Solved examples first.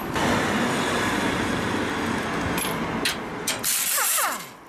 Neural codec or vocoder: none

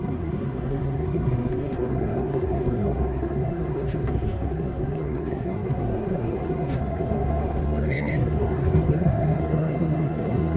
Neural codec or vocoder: codec, SNAC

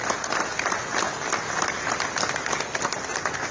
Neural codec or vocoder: none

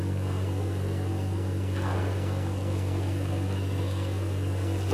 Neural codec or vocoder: codec, SNAC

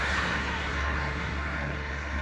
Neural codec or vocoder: codec, SNAC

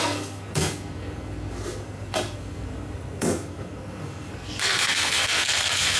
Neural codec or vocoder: codec, SNAC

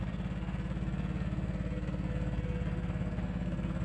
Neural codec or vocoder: codec, SNAC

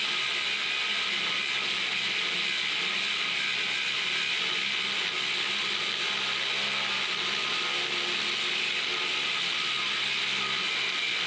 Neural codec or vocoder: none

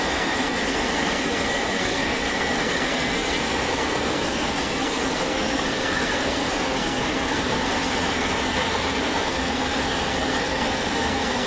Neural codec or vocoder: codec, SNAC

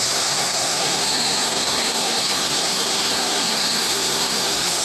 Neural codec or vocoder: codec, SNAC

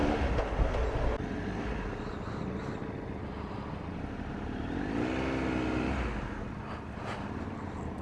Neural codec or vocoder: none